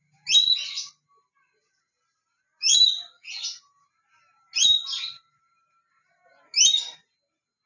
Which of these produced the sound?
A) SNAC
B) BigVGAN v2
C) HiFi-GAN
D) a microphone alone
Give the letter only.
D